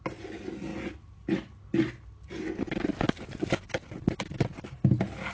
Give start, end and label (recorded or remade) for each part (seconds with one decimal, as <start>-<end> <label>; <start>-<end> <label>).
0.0-5.3 recorded